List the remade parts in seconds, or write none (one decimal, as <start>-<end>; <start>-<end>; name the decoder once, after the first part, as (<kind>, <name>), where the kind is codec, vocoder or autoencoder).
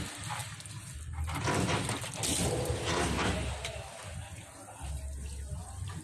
none